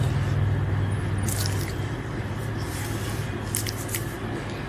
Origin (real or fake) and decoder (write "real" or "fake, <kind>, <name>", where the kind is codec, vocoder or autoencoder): real